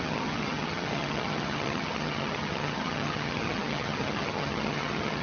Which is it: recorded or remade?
remade